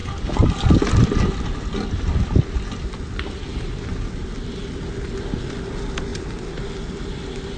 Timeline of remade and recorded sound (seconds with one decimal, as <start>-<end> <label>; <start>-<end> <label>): 0.0-7.6 recorded